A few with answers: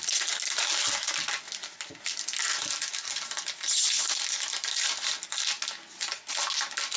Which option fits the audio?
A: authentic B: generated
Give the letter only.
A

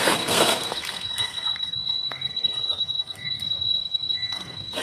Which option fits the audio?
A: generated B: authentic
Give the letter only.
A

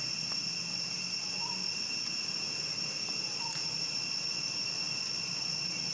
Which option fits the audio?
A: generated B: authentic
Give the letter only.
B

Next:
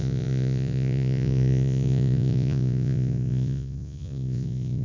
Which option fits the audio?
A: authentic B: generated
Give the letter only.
B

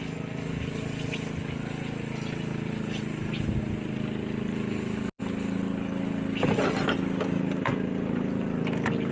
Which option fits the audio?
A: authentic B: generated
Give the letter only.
A